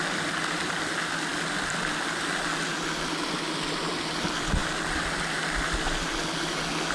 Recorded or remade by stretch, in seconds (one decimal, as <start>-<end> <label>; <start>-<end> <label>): 0.0-6.9 recorded